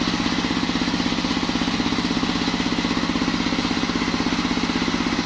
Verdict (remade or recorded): recorded